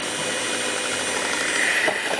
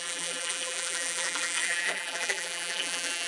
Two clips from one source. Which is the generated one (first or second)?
second